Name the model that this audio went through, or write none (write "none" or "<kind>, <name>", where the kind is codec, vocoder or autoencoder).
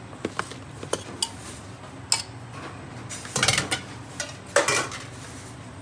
none